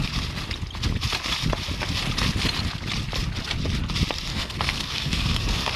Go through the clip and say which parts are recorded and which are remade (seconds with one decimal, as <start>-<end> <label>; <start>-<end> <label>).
0.0-4.3 recorded; 4.3-5.8 remade